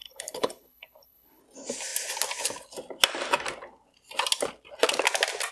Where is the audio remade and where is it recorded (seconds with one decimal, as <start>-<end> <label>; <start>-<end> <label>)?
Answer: 0.0-1.4 remade; 1.4-5.5 recorded